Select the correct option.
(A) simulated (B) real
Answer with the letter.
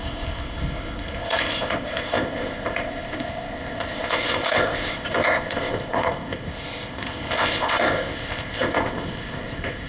A